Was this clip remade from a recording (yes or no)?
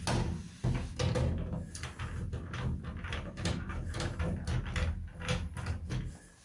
no